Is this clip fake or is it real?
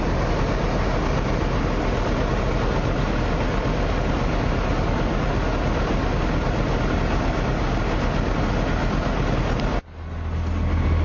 real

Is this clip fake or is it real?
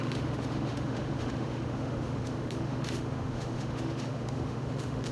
fake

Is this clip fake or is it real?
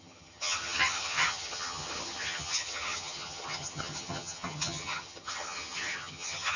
fake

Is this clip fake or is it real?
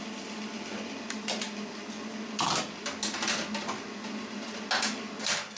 real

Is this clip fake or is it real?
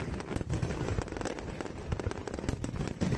real